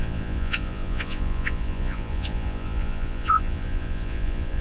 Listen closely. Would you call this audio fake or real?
fake